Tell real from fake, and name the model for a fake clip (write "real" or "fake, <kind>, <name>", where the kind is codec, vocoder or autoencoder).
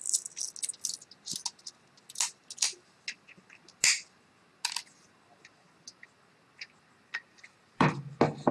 real